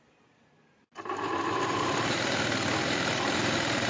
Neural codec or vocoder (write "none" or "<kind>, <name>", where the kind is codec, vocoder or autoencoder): vocoder, BigVGAN v2